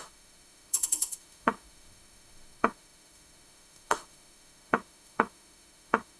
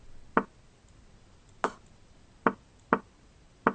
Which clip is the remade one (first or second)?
first